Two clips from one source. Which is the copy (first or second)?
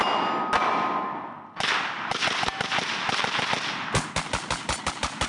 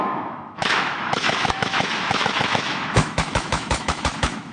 second